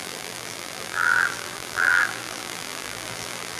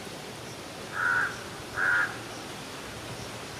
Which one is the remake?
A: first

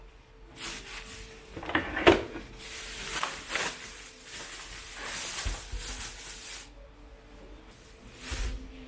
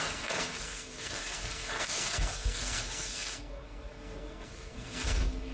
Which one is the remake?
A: second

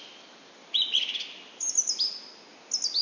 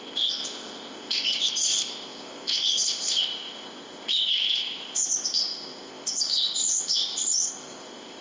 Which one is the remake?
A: second